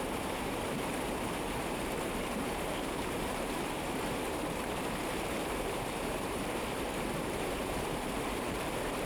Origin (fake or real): fake